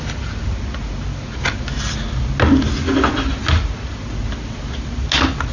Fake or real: real